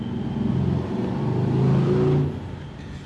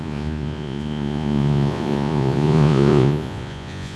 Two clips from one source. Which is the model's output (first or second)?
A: second